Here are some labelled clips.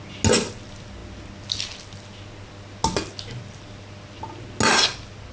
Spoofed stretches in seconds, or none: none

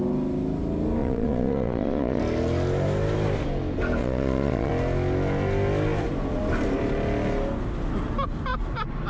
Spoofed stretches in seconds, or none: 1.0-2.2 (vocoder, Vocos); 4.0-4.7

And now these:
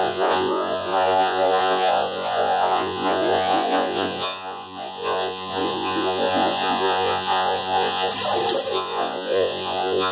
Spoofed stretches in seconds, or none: 0.0-8.1 (vocoder, Vocos); 8.7-10.1